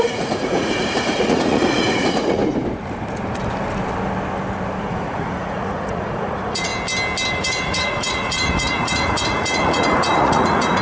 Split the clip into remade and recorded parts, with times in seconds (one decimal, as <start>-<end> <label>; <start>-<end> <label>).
0.0-2.4 remade; 2.4-4.8 recorded; 4.8-6.7 remade; 6.7-7.3 recorded; 7.3-10.8 remade